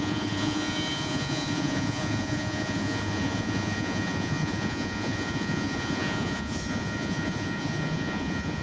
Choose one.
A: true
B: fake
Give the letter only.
B